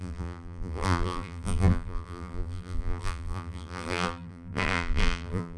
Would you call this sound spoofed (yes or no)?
yes